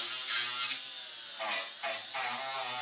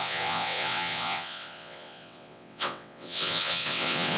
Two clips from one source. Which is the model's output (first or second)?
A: second